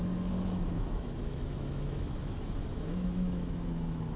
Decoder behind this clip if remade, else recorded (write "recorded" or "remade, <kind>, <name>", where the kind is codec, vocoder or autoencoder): remade, autoencoder, DAC-VAE